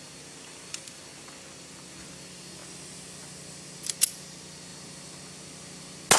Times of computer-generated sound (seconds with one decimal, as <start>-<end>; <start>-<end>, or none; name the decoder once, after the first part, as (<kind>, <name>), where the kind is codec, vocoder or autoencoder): none